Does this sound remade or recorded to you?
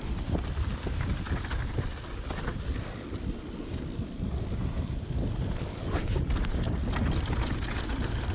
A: recorded